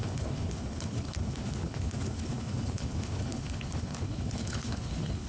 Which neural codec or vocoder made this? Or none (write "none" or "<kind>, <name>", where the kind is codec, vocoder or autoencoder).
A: codec, HILCodec